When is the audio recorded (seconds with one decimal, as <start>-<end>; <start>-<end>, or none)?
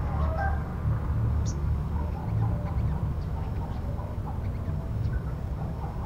0.7-1.3; 2.2-3.1; 4.2-4.7